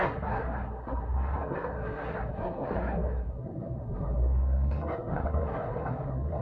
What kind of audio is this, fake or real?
fake